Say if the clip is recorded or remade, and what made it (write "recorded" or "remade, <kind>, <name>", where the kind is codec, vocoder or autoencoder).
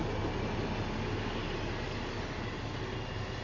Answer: recorded